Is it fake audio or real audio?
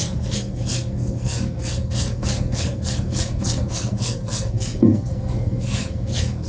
fake